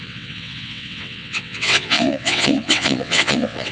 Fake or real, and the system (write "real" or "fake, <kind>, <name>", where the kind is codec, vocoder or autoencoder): fake, vocoder, WaveNeXt